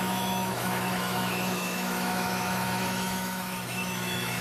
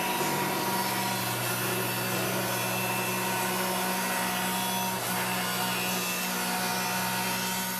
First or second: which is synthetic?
first